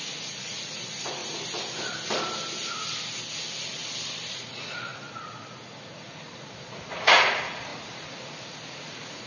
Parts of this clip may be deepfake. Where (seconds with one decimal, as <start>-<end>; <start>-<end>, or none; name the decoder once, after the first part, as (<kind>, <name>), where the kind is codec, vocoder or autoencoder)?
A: 0.0-1.2 (vocoder, Vocos); 4.3-9.3

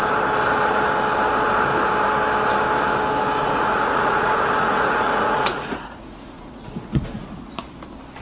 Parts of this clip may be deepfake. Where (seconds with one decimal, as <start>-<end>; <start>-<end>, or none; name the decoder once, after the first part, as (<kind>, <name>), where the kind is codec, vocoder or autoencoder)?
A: 3.4-7.5 (vocoder, Vocos)